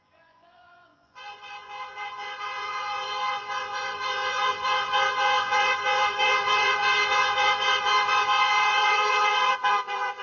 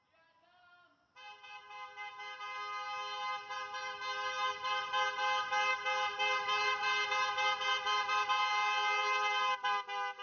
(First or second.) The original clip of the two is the second